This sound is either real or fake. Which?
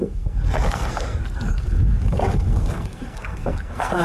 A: fake